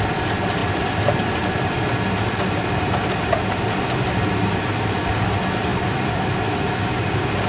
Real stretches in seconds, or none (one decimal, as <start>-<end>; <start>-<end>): 0.0-0.6; 2.2-5.7; 6.2-7.5